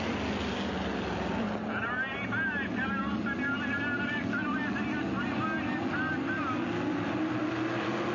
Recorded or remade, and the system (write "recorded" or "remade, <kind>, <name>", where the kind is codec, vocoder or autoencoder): recorded